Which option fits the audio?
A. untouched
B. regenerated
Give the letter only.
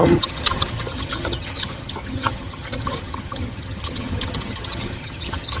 B